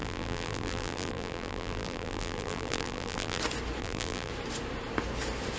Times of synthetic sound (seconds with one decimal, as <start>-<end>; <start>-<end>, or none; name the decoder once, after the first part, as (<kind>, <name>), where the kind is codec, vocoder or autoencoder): 0.0-3.4 (vocoder, BigVGAN v2); 3.8-4.3